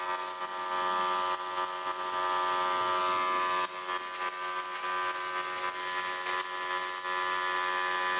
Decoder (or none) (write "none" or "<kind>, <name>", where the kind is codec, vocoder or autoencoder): none